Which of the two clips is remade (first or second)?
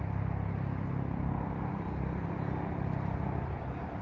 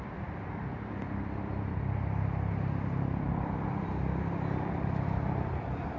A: second